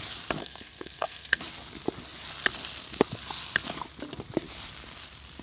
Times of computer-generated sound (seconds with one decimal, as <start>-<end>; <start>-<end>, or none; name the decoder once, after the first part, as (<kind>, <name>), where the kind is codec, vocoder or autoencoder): 0.4-1.4 (codec, SNAC)